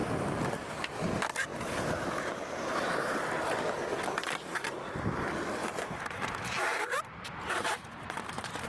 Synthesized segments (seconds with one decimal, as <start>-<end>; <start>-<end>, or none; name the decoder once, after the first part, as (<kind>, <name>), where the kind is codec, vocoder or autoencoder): 1.5-3.3 (vocoder, BigVGAN v2); 5.6-8.7